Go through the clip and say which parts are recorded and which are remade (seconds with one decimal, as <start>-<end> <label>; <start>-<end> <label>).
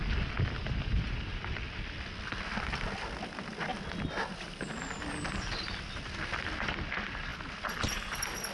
0.0-0.6 recorded; 0.6-1.4 remade; 1.4-8.5 recorded